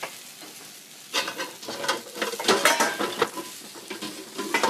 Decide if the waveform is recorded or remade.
recorded